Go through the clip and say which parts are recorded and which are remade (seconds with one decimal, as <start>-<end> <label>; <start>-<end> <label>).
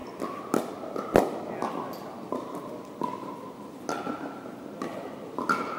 0.0-5.8 recorded